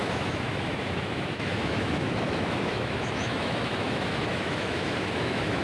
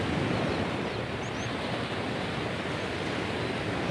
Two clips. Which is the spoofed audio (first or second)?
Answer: first